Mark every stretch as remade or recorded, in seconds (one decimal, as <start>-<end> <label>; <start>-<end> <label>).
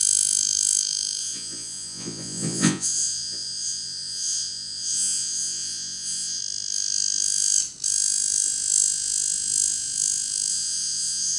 0.0-1.2 recorded; 1.2-6.4 remade; 6.4-10.5 recorded; 10.5-11.4 remade